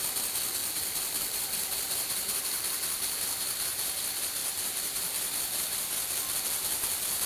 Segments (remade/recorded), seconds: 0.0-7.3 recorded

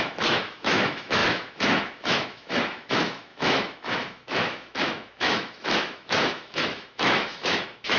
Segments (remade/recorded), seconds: 0.0-8.0 remade

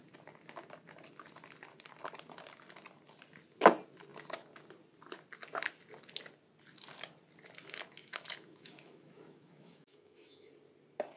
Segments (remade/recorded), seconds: 0.0-8.0 recorded; 8.0-10.5 remade; 10.5-11.2 recorded

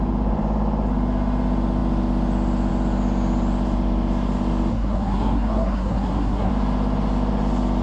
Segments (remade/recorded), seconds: 0.0-4.7 recorded; 4.7-6.5 remade; 6.5-7.8 recorded

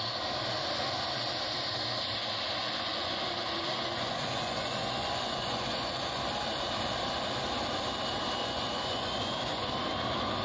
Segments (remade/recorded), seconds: 0.0-2.6 recorded; 2.6-6.3 remade; 6.3-8.4 recorded; 8.4-9.7 remade; 9.7-10.4 recorded

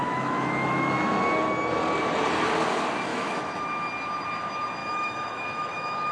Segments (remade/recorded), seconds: 0.0-1.2 remade; 1.2-3.1 recorded; 3.1-3.6 remade; 3.6-4.8 recorded; 4.8-6.1 remade

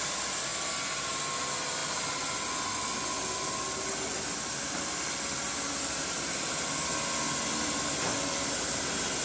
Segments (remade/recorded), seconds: 0.0-9.2 recorded

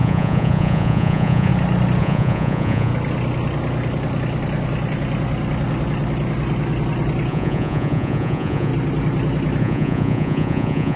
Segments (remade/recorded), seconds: 0.0-1.5 remade; 1.5-2.0 recorded; 2.0-2.9 remade; 2.9-7.3 recorded; 7.3-8.7 remade; 8.7-9.6 recorded; 9.6-11.0 remade